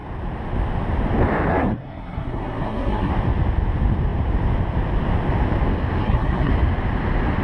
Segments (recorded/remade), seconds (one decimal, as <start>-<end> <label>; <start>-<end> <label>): 0.0-1.5 recorded; 1.5-3.1 remade; 3.1-6.0 recorded; 6.0-6.5 remade; 6.5-7.4 recorded